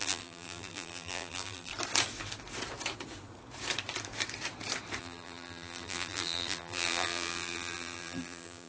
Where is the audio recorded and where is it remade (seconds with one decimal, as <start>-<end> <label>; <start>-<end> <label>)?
0.0-1.7 remade; 1.7-5.0 recorded; 5.0-8.7 remade